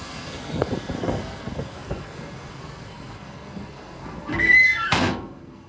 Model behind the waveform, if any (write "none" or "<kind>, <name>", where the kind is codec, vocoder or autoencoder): codec, SNAC